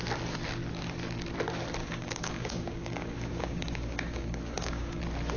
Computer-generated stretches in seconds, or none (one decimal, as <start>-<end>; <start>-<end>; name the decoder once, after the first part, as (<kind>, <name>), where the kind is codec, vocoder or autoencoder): 1.8-5.0 (codec, DAC)